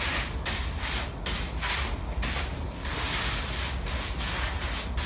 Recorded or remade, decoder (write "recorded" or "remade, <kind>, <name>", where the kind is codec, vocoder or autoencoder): recorded